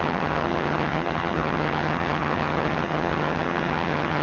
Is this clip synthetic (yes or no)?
yes